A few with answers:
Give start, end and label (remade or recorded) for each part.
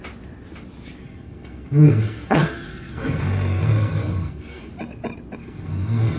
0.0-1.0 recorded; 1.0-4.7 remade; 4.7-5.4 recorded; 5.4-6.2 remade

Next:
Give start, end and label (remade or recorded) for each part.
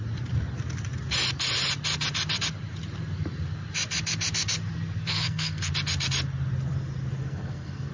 0.0-5.0 recorded; 5.0-5.7 remade; 5.7-7.2 recorded; 7.2-7.9 remade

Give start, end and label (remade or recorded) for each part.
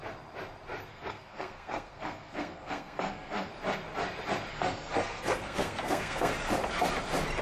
0.0-0.9 recorded; 0.9-3.5 remade; 3.5-4.5 recorded; 4.5-6.3 remade; 6.3-7.4 recorded